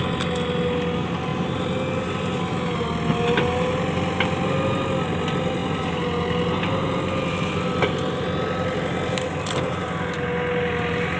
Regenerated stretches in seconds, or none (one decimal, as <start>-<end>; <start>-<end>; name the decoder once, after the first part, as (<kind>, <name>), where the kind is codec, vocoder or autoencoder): none